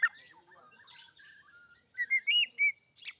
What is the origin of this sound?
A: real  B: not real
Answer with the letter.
A